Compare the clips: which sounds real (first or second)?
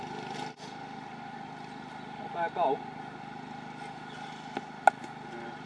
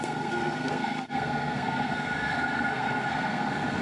first